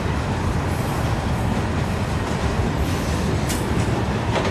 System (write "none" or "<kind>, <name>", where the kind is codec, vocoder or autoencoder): vocoder, BigVGAN v2